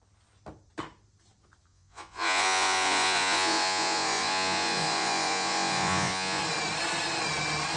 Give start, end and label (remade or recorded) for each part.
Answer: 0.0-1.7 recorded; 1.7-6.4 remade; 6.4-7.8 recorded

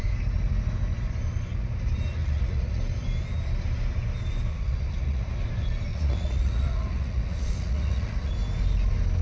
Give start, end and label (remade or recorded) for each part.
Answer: 0.0-2.2 recorded; 2.2-2.8 remade; 2.8-4.5 recorded; 4.5-5.3 remade; 5.3-5.9 recorded; 5.9-8.3 remade; 8.3-9.2 recorded

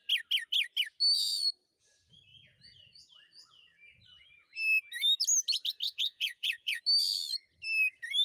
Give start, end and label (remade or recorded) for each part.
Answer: 0.0-5.8 recorded; 5.8-6.8 remade; 6.8-8.2 recorded